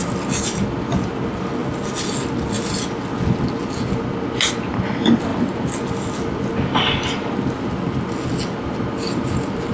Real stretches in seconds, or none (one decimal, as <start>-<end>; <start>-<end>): 0.0-9.7